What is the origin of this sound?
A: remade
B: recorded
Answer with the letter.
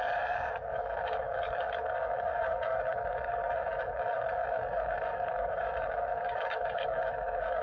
A